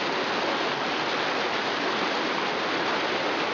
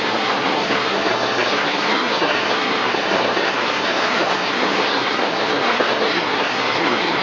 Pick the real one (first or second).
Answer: first